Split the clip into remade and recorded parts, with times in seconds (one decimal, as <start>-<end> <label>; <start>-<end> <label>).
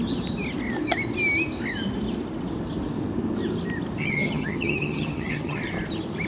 0.0-4.0 recorded; 4.0-5.6 remade; 5.6-6.3 recorded